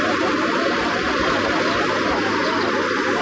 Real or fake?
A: real